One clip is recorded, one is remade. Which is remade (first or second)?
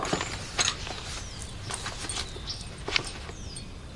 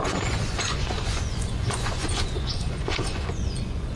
second